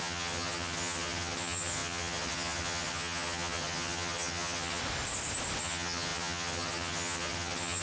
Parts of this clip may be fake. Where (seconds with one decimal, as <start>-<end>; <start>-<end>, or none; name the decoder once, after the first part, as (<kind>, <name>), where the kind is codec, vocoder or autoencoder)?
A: 0.0-4.8 (vocoder, HiFi-GAN); 5.6-7.8